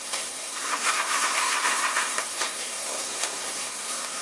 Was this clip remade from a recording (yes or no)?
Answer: yes